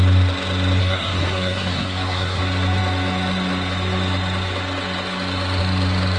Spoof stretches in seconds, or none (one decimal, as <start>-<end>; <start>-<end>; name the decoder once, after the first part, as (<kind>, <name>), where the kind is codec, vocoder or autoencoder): 0.8-2.4 (codec, SNAC)